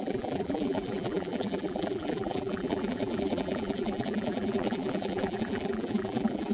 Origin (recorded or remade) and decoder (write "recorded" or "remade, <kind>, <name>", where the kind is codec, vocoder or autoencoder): remade, vocoder, BigVGAN v2